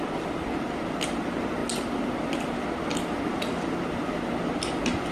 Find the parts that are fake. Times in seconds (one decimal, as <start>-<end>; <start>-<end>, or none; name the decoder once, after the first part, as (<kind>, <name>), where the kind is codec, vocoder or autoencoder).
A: none